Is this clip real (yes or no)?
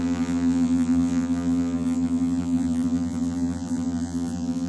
no